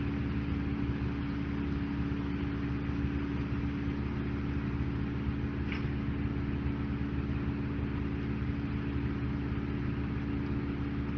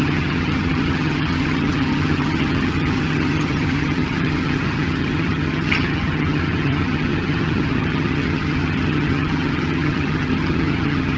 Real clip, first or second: first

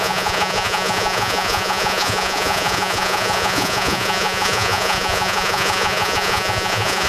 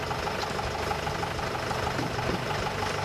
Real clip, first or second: second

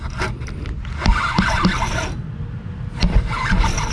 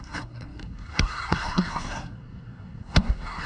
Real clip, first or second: first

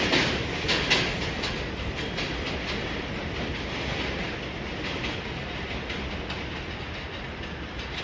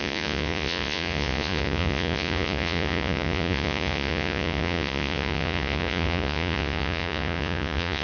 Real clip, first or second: first